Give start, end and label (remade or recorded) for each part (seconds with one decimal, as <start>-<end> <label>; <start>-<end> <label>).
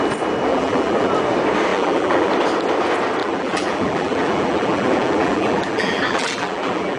0.0-0.5 recorded; 0.5-1.1 remade; 1.1-1.7 recorded; 1.7-2.3 remade; 2.3-3.2 recorded; 3.2-7.0 remade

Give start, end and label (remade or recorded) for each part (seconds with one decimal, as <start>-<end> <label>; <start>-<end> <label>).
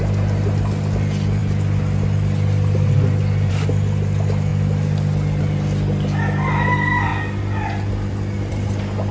0.0-9.1 recorded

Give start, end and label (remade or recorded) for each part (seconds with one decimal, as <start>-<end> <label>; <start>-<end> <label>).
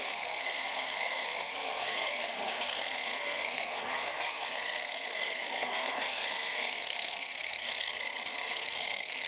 0.0-8.0 remade; 8.0-8.5 recorded; 8.5-9.3 remade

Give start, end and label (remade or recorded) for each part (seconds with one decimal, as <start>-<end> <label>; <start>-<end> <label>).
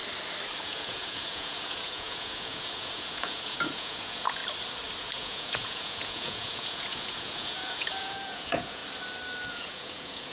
0.0-0.6 recorded; 0.6-4.4 remade; 4.4-5.0 recorded; 5.0-8.8 remade; 8.8-9.5 recorded; 9.5-10.3 remade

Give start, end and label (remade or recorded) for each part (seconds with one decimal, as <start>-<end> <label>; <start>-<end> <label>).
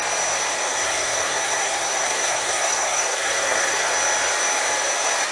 0.0-0.7 recorded; 0.7-3.9 remade; 3.9-5.3 recorded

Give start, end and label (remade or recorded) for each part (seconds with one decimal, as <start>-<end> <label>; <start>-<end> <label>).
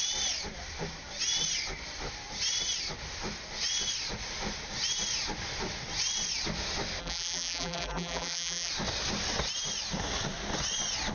0.0-7.0 recorded; 7.0-8.7 remade; 8.7-11.1 recorded